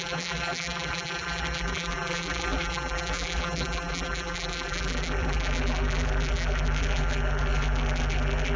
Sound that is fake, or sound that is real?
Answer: fake